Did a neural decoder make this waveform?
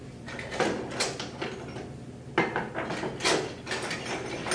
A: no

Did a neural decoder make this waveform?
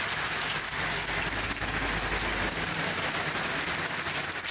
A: no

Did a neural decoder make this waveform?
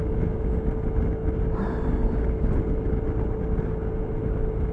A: no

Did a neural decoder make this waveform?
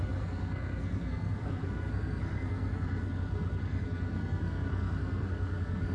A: yes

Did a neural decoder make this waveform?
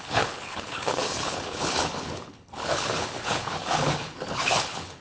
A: yes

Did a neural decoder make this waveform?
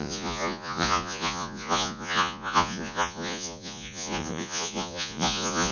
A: yes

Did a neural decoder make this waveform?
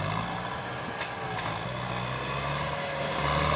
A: no